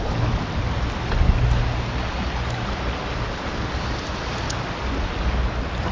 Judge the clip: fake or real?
real